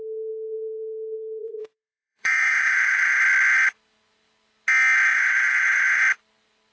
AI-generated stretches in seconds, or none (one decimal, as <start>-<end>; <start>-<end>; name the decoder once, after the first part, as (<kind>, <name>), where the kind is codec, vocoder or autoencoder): 1.4-3.2 (vocoder, Vocos); 5.1-6.0